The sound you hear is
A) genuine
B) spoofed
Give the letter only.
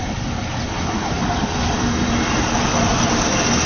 A